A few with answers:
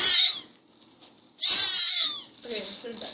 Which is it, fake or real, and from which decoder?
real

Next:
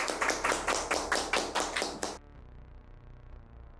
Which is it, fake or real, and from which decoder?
real